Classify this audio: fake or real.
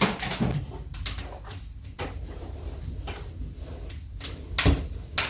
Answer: real